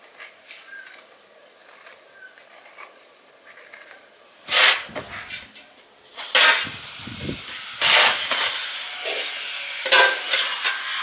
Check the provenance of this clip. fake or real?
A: real